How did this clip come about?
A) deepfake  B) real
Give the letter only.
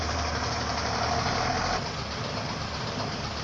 A